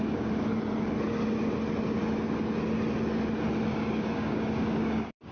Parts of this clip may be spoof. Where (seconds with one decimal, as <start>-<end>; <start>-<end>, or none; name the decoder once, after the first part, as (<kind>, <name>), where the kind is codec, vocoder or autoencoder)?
0.0-0.5 (codec, DAC); 3.7-5.3